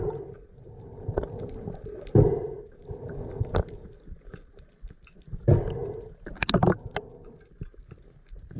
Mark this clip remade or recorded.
recorded